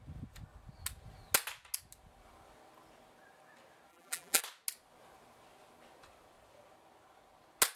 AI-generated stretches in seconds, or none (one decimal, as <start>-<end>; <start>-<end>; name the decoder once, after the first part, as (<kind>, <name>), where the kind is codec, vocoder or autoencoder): 3.9-4.4 (vocoder, BigVGAN v2)